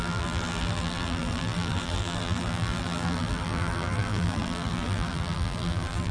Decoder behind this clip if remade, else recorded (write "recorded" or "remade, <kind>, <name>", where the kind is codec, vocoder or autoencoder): remade, vocoder, BigVGAN v2